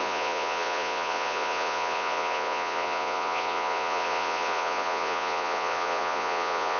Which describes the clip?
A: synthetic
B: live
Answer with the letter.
A